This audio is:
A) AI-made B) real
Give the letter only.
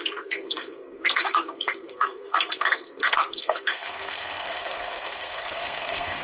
A